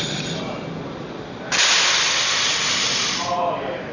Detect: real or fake real